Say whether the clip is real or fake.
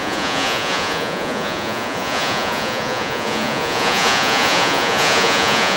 fake